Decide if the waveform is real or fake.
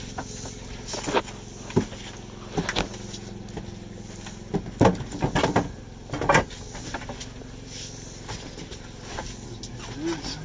real